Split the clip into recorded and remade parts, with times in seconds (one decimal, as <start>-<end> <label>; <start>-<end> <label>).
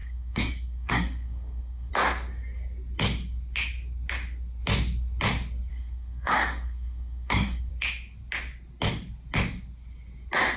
0.0-1.9 remade; 1.9-5.7 recorded; 5.7-7.7 remade; 7.7-10.6 recorded